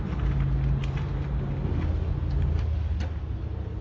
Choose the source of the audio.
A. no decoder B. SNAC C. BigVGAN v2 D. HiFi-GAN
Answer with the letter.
A